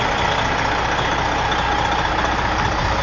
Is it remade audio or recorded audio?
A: recorded